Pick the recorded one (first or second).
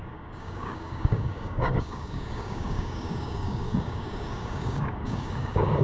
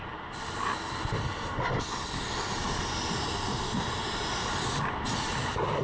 second